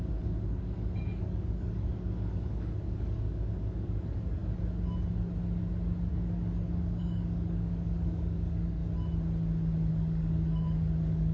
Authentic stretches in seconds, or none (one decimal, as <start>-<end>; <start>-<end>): 4.4-6.1; 8.8-9.9